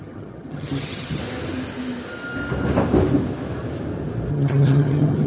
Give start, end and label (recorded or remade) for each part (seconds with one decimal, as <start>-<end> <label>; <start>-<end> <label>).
0.0-1.2 remade; 1.2-4.3 recorded; 4.3-5.3 remade